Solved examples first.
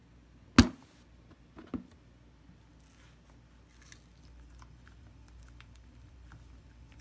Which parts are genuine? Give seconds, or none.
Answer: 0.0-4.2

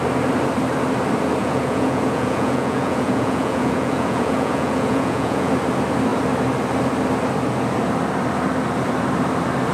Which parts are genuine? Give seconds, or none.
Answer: 0.0-1.4; 5.5-9.7

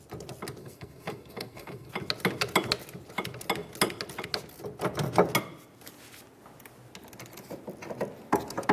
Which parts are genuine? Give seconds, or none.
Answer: 0.0-0.6; 1.9-8.7

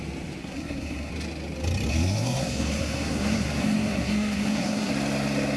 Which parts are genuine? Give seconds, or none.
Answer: 0.0-0.4; 1.1-1.9; 4.9-5.6

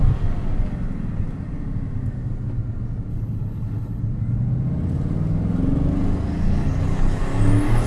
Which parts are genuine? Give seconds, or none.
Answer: 0.0-3.1; 4.0-6.5; 7.2-7.9

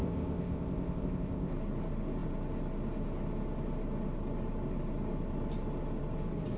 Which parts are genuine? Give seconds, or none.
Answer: 1.5-6.6

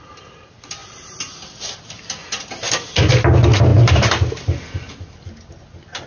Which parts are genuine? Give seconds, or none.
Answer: 0.0-6.1

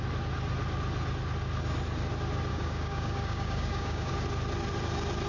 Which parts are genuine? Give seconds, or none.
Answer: 0.0-2.5; 4.1-5.3